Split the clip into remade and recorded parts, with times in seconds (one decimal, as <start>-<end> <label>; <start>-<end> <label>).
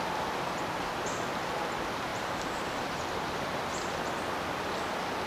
0.0-2.1 recorded; 2.1-3.6 remade; 3.6-5.3 recorded